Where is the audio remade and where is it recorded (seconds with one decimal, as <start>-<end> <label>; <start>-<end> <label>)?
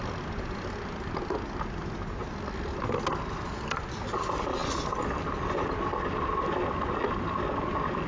0.0-8.1 recorded